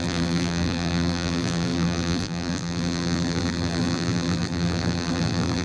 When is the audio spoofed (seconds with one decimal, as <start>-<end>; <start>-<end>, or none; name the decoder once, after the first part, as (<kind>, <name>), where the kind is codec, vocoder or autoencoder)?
0.0-5.6 (vocoder, BigVGAN v2)